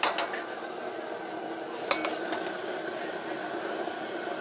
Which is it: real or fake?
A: real